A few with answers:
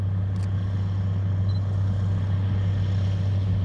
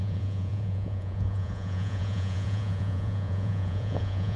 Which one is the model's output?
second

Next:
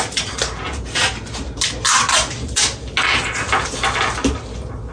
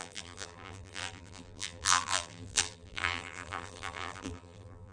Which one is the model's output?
second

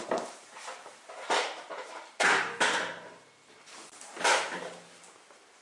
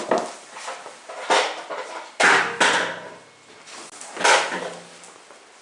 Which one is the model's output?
first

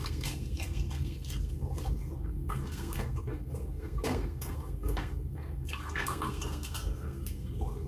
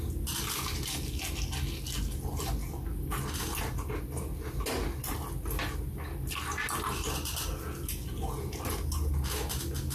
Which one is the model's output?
first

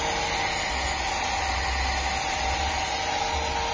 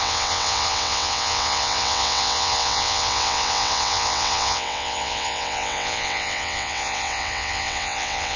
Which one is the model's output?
second